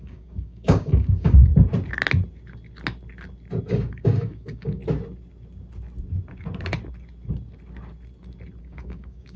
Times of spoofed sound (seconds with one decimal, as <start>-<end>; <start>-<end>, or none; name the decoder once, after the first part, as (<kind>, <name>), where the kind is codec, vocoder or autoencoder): 0.0-1.5 (codec, DAC); 3.6-4.8; 8.6-9.4